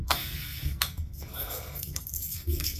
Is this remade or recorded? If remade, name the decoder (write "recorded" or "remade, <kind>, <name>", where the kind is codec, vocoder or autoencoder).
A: remade, codec, SNAC